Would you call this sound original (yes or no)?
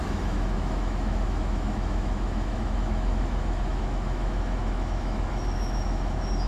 no